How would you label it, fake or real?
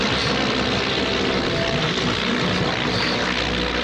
real